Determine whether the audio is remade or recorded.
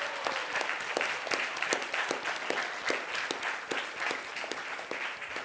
recorded